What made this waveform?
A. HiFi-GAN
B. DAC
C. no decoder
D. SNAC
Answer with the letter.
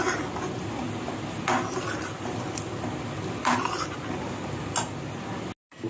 C